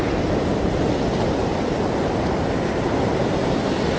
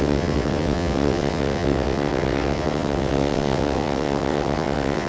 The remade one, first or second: second